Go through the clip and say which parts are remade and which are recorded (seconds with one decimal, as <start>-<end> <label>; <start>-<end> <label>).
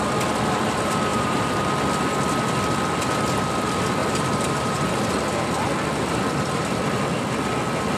0.0-1.1 recorded; 1.1-1.7 remade; 1.7-4.0 recorded; 4.0-5.0 remade; 5.0-8.0 recorded